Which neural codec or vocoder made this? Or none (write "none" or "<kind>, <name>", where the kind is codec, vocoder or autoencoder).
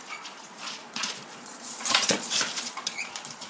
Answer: vocoder, Vocos